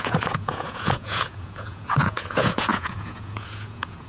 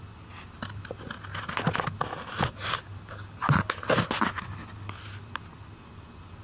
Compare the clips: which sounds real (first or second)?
second